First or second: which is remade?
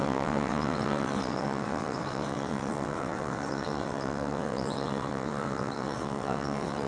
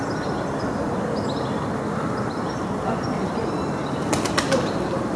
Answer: first